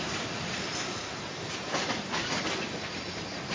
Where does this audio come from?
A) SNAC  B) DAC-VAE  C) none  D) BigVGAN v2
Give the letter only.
D